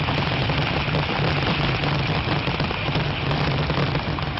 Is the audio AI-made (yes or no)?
no